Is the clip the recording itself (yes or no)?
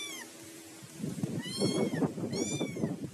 no